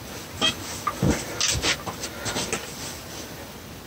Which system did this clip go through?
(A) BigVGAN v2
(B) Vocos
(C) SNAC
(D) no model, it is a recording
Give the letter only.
D